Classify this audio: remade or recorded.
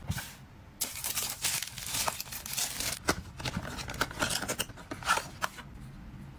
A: recorded